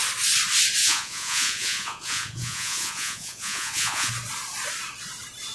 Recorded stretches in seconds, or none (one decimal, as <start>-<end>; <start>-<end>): 0.0-0.8; 4.1-5.5

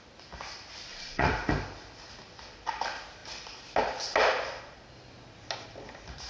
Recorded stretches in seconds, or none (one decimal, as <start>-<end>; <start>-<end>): 0.0-0.9; 1.5-6.3

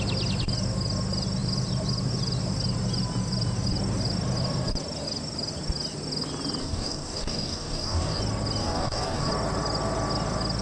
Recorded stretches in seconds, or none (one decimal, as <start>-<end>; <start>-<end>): 0.0-6.6; 8.2-8.6; 9.3-10.6

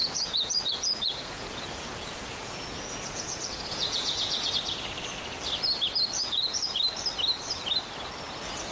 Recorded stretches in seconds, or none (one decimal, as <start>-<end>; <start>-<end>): 4.5-6.2; 6.8-8.7

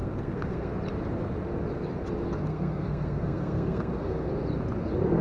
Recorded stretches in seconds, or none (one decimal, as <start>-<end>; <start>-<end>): 0.7-2.5; 4.3-5.2